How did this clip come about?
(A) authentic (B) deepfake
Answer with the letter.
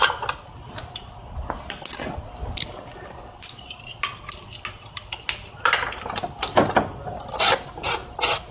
A